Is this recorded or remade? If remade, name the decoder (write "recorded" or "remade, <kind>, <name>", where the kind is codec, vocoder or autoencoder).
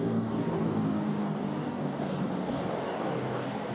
remade, codec, DAC